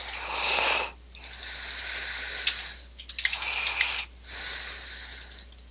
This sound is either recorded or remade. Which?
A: recorded